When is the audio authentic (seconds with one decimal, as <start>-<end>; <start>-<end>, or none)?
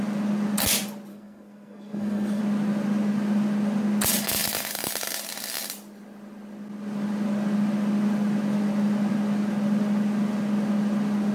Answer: 0.0-1.1; 2.4-11.3